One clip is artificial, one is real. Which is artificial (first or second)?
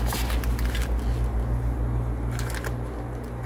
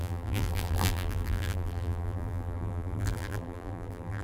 second